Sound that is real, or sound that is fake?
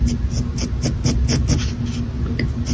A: real